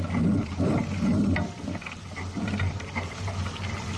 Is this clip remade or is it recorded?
recorded